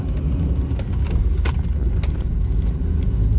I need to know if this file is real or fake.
real